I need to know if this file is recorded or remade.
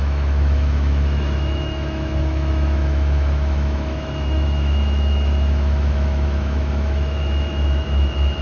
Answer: remade